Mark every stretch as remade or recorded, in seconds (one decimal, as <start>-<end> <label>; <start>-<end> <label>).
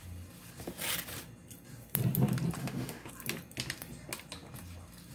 0.0-2.6 recorded; 2.6-3.1 remade; 3.1-5.1 recorded